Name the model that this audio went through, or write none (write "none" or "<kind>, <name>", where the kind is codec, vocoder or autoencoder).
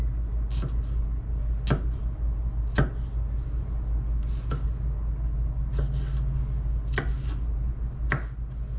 none